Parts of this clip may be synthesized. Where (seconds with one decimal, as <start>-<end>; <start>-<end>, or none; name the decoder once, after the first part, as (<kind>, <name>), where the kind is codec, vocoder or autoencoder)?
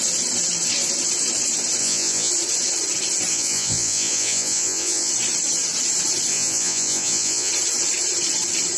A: 1.8-2.3 (vocoder, Vocos); 3.3-5.1; 6.3-7.5